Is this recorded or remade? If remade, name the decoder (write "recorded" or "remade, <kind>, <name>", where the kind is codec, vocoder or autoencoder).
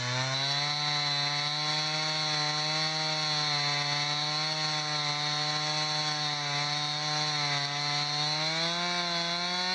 recorded